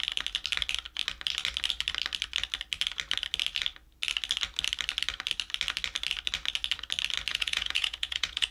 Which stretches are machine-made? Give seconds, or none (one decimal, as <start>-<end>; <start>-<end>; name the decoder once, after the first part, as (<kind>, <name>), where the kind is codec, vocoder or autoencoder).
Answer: 7.3-8.5 (vocoder, Vocos)